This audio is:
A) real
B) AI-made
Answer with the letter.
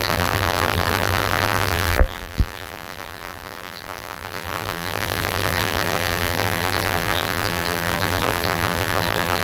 B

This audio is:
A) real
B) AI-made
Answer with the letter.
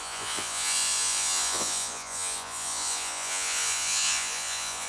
B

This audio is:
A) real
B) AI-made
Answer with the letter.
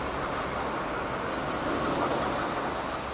A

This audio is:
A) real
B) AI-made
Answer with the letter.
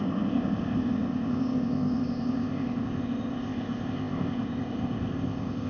B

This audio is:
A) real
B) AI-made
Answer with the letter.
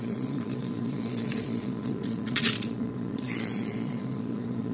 B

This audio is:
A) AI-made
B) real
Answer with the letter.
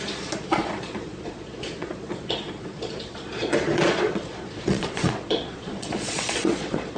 A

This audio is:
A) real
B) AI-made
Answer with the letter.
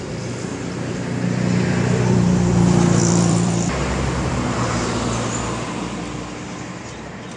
B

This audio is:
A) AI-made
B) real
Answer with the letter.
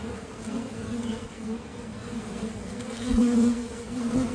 A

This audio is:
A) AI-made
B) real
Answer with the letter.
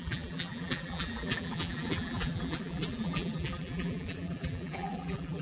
A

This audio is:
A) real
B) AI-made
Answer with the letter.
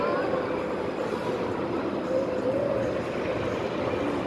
A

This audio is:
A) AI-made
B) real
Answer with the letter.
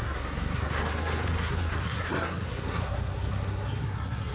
A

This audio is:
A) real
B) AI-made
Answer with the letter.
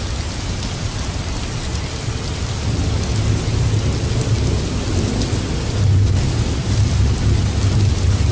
A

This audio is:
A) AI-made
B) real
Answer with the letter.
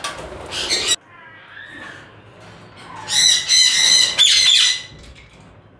B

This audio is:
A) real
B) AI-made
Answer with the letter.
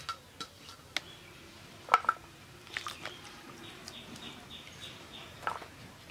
A